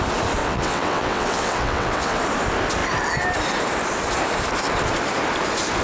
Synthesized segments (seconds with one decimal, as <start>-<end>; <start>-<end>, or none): 0.4-2.2